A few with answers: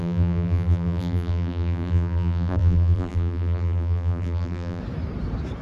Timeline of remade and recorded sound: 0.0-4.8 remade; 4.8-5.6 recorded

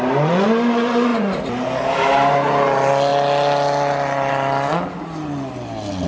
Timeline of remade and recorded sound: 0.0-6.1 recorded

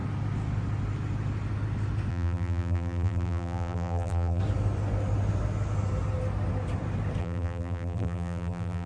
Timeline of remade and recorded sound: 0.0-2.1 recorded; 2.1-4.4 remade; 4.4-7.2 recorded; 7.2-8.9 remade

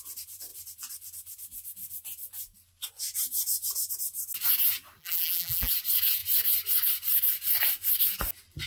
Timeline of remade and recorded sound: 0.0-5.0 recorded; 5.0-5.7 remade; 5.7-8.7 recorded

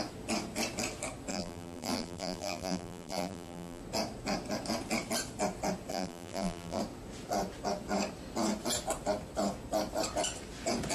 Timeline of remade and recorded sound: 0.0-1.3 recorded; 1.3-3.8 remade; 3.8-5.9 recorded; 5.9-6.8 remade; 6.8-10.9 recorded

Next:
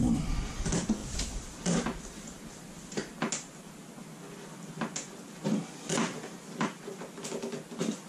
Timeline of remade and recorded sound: 0.0-1.0 recorded; 1.0-3.3 remade; 3.3-8.1 recorded